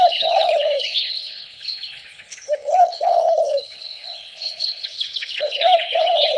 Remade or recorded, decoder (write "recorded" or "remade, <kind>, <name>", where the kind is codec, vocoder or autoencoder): remade, codec, HILCodec